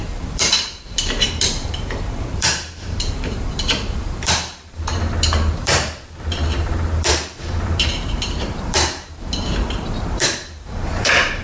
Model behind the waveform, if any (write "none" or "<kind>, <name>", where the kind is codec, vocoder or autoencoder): vocoder, BigVGAN v2